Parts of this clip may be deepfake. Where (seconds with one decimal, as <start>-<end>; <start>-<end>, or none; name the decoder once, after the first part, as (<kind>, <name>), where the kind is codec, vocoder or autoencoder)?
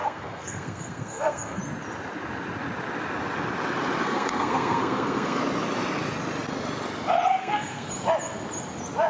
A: 0.0-1.6 (codec, SNAC); 4.0-5.4; 7.4-7.9